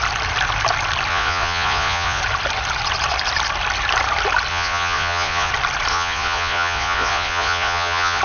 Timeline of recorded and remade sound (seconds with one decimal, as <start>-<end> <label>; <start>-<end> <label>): 0.0-1.1 recorded; 1.1-2.2 remade; 2.2-4.5 recorded; 4.5-5.5 remade; 5.5-5.9 recorded; 5.9-8.2 remade